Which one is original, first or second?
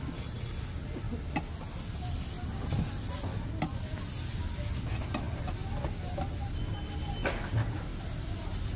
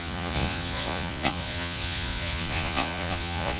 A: first